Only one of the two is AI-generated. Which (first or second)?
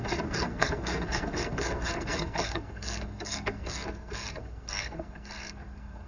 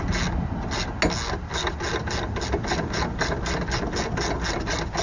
first